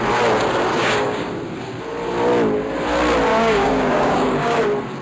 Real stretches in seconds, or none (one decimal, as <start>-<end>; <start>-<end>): 0.0-0.7; 1.3-3.3; 4.6-5.0